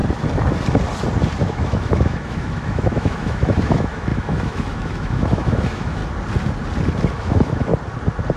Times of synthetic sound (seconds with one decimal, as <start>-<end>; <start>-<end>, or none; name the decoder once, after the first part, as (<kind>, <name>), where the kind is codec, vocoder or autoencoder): 1.5-6.0 (autoencoder, DAC-VAE); 7.1-7.7